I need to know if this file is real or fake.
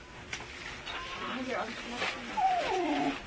fake